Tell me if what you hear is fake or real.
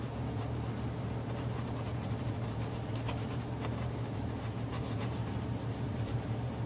fake